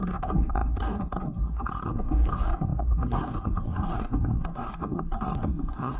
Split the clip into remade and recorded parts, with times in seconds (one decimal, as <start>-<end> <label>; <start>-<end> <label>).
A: 0.0-6.0 remade